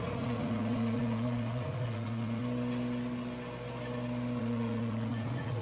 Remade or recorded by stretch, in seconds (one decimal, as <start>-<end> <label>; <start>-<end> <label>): 0.0-2.4 remade; 2.4-4.4 recorded; 4.4-5.6 remade